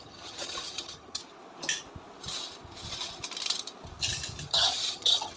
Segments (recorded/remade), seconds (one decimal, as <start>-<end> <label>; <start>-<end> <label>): 0.0-1.2 remade; 1.2-4.4 recorded; 4.4-5.4 remade